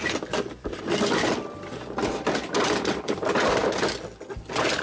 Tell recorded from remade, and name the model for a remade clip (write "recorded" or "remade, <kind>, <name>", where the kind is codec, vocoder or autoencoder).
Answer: recorded